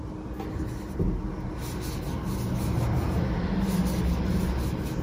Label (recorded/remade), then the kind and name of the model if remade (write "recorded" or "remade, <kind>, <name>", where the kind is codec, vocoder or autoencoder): recorded